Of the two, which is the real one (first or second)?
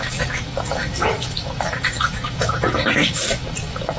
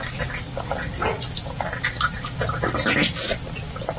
second